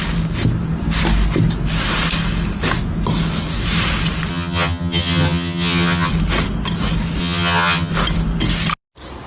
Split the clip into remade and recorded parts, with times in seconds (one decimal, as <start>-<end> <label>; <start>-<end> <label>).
0.0-4.3 recorded; 4.3-6.1 remade; 6.1-7.2 recorded; 7.2-7.9 remade; 7.9-9.3 recorded